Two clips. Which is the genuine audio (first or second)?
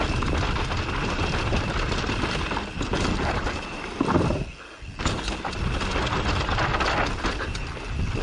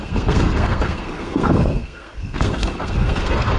first